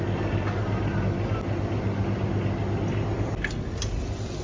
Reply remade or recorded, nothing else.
recorded